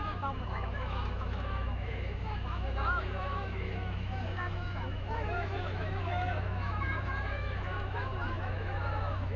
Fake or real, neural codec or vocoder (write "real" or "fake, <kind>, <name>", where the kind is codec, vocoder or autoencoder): fake, autoencoder, DAC-VAE